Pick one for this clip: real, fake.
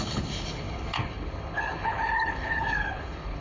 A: fake